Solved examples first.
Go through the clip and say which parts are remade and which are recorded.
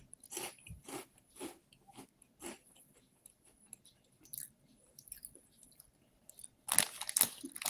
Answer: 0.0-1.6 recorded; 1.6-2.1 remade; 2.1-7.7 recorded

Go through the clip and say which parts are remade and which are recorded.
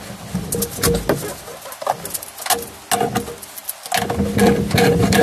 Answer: 0.0-5.2 recorded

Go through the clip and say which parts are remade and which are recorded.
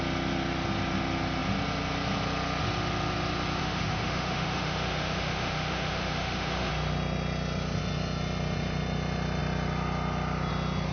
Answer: 0.0-3.6 recorded; 3.6-6.7 remade; 6.7-10.9 recorded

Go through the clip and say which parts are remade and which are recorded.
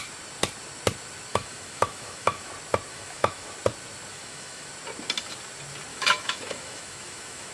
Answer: 0.0-1.3 recorded; 1.3-2.5 remade; 2.5-2.9 recorded; 2.9-3.5 remade; 3.5-4.1 recorded; 4.1-4.7 remade; 4.7-5.9 recorded; 5.9-7.5 remade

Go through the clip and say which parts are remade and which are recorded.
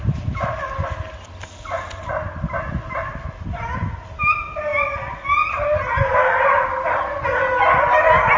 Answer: 0.0-8.4 recorded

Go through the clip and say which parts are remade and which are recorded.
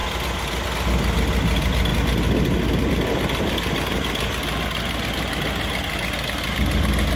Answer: 0.0-7.2 recorded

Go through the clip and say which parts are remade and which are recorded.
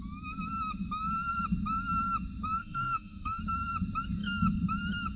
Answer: 0.0-2.6 recorded; 2.6-3.4 remade; 3.4-5.2 recorded